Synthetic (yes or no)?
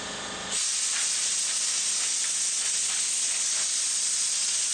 no